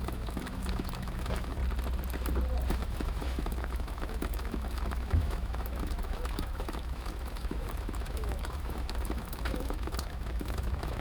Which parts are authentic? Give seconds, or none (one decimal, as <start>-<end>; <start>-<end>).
1.6-2.7